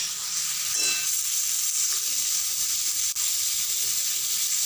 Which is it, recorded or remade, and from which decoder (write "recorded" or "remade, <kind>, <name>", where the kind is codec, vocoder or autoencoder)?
recorded